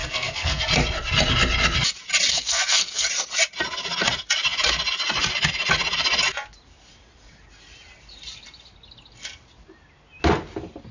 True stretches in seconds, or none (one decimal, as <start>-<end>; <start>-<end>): 0.7-2.3; 3.1-10.9